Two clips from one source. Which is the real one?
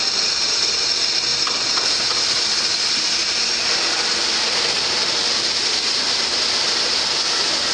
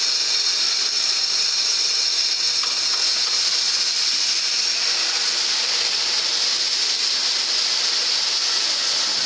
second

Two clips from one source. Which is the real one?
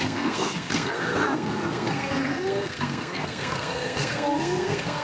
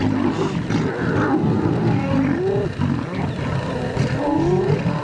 second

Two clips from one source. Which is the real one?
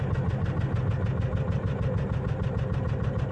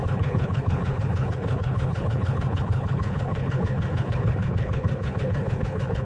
first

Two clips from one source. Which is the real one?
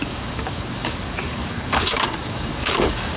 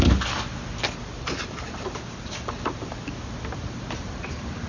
second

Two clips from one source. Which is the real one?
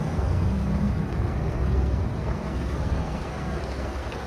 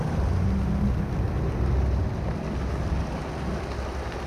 second